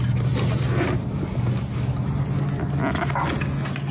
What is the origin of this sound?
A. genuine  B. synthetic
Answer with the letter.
A